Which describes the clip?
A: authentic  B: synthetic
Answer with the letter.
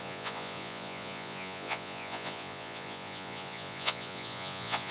B